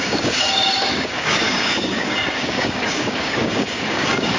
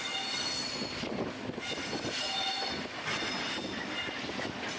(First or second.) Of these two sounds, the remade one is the first